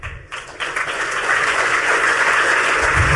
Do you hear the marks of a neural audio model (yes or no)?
yes